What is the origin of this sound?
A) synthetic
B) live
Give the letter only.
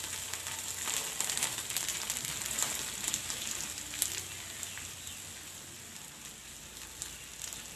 B